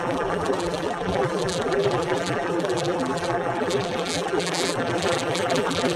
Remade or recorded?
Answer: remade